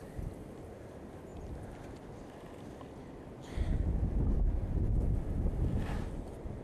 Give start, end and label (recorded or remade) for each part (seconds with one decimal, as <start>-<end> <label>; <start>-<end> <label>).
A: 0.0-6.6 recorded